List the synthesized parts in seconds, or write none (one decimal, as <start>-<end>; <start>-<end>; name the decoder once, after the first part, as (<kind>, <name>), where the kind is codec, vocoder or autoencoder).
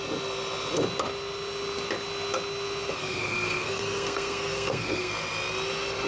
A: 3.0-5.1 (codec, SNAC)